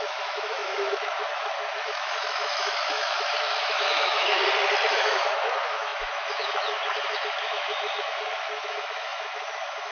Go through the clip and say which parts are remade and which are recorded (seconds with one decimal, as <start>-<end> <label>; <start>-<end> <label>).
0.0-4.4 remade; 4.4-4.9 recorded; 4.9-9.9 remade